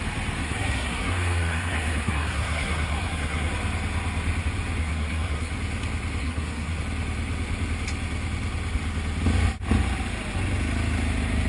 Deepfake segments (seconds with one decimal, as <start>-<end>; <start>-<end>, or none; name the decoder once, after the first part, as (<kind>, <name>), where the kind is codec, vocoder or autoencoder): 0.4-3.5 (codec, SNAC); 4.8-5.5; 6.2-6.8